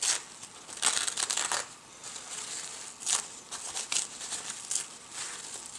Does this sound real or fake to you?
real